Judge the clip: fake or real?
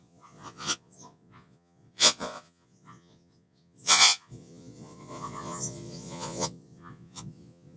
fake